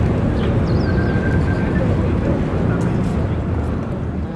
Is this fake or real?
real